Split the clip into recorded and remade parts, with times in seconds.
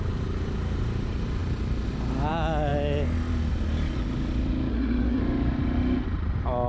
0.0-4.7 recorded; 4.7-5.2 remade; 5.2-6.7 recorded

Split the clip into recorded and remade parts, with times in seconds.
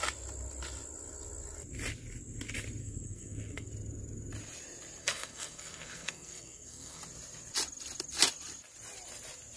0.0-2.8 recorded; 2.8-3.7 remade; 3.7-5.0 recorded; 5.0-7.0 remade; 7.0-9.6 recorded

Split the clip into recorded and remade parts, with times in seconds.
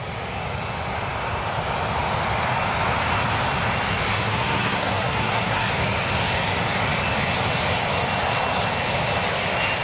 0.0-4.1 recorded; 4.1-5.7 remade; 5.7-9.8 recorded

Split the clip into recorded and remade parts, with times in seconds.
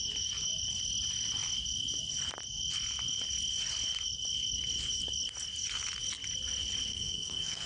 0.0-6.9 recorded; 6.9-7.7 remade